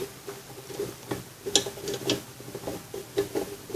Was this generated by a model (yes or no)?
no